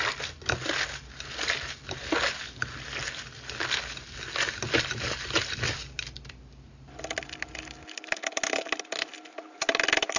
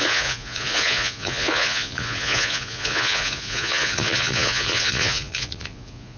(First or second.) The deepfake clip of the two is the second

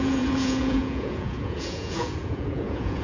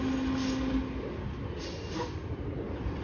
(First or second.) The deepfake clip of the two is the first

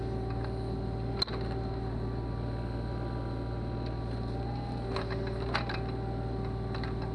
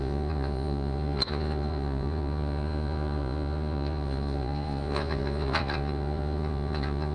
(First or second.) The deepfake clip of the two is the second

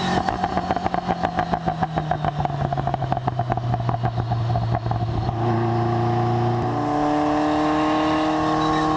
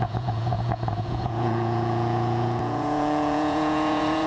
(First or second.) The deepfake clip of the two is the second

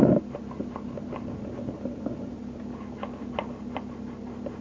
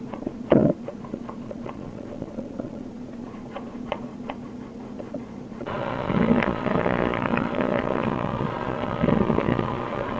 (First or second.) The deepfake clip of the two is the second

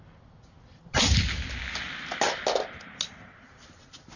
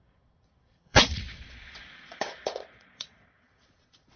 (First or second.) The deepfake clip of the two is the second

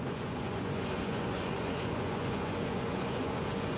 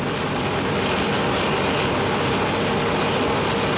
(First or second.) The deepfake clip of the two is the first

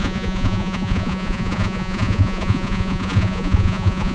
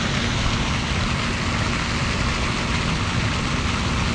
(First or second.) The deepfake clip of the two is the first